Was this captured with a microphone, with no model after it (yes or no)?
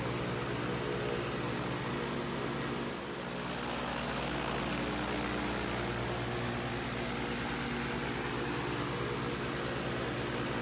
yes